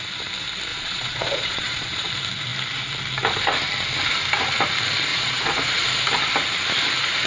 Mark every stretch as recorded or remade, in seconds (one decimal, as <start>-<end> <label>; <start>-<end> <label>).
0.0-0.7 recorded; 0.7-2.1 remade; 2.1-5.1 recorded; 5.1-5.8 remade; 5.8-7.3 recorded